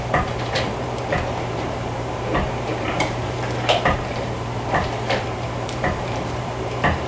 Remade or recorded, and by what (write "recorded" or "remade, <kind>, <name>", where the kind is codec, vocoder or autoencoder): remade, vocoder, BigVGAN v2